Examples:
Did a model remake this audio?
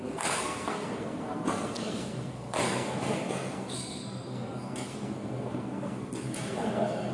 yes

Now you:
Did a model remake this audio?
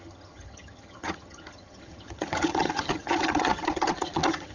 yes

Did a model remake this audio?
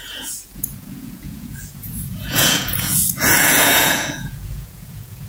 yes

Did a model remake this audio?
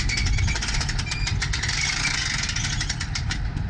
no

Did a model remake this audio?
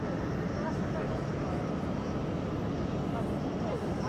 no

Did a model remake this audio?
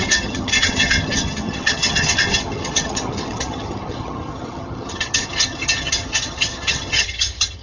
yes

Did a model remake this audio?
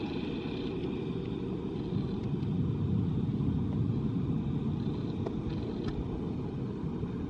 no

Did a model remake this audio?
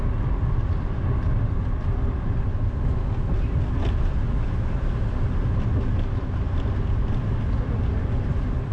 no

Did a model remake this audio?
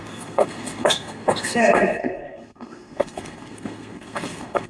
yes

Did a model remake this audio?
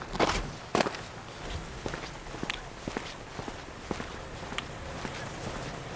no